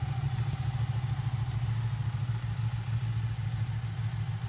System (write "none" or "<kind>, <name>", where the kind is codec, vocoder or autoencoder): none